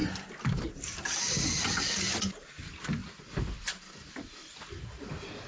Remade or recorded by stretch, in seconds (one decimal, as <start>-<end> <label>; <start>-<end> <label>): 0.0-5.5 recorded